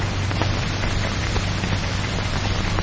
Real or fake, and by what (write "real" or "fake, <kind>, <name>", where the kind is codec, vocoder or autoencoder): real